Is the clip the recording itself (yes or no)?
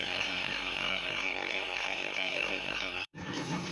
no